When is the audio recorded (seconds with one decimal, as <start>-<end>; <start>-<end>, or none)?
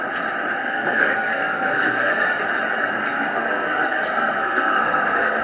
0.0-0.6; 2.4-3.0